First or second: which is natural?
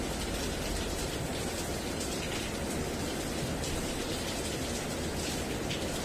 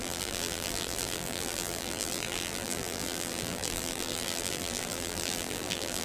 first